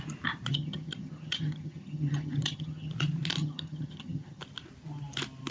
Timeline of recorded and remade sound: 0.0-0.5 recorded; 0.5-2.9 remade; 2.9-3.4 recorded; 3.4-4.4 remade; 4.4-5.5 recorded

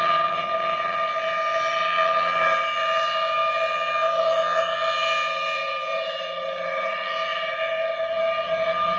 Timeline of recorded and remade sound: 0.0-9.0 remade